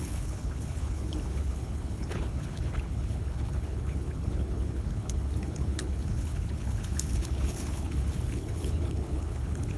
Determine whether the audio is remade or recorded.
remade